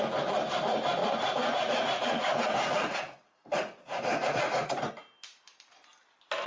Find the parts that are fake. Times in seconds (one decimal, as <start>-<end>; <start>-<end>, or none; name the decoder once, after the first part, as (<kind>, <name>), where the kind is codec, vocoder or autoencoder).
1.0-4.9 (vocoder, Vocos)